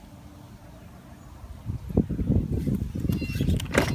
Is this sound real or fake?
real